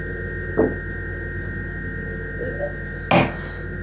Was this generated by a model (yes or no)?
no